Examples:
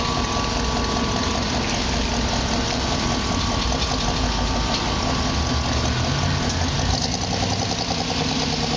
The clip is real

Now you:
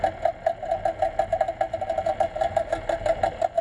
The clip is real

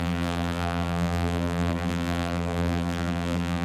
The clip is fake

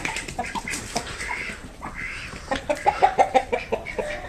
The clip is real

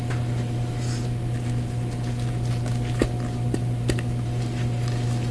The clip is real